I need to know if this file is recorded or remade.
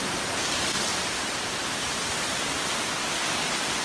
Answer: recorded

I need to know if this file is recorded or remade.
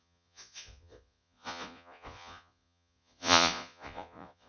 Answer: remade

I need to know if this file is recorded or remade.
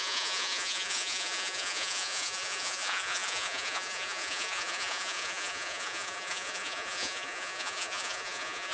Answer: remade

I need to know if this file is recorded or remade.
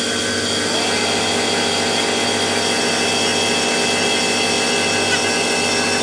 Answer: recorded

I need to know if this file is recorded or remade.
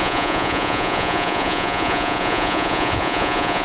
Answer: remade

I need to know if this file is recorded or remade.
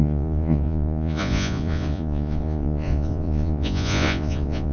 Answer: remade